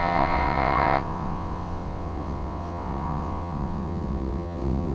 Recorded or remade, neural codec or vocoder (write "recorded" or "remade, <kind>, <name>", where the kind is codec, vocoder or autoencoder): remade, vocoder, WaveNeXt